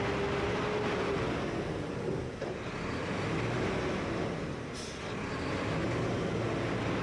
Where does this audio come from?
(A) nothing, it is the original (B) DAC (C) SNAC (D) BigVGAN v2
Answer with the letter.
A